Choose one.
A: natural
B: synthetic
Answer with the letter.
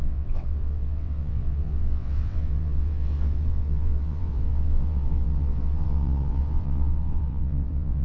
B